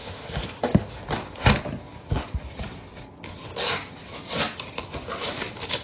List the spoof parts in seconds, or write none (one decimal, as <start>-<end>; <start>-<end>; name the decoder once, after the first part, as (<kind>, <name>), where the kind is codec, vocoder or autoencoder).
0.0-1.0 (autoencoder, DAC-VAE)

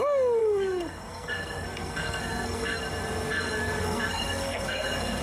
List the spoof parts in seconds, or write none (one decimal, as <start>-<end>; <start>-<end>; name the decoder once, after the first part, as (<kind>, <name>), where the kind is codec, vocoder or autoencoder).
0.4-2.8 (codec, SNAC); 3.3-5.2

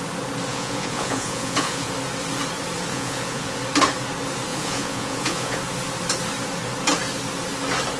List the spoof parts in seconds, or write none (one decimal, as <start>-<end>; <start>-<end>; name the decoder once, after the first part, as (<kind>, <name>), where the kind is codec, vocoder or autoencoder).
0.5-1.9 (vocoder, Vocos); 2.9-3.6; 4.5-5.6

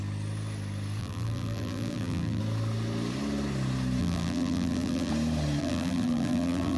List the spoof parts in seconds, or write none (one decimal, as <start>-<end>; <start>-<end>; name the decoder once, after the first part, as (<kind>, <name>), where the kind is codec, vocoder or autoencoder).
1.0-2.4 (vocoder, BigVGAN v2); 4.0-5.1; 5.6-6.8

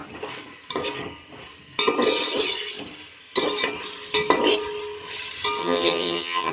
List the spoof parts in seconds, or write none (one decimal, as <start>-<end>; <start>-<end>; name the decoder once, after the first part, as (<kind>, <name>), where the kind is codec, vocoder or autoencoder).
5.6-6.5 (vocoder, HiFi-GAN)

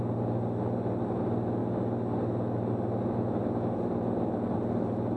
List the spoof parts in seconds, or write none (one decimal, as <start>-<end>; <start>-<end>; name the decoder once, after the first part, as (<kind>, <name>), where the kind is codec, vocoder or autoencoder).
none

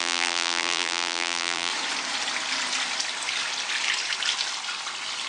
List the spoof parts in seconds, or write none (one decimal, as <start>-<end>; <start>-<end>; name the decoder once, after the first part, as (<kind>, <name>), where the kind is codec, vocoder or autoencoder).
0.0-1.7 (vocoder, BigVGAN v2)